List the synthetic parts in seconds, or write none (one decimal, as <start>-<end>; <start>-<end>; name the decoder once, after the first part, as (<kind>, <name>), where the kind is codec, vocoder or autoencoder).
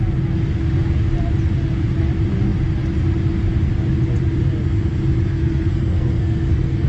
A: 5.3-6.9 (codec, SNAC)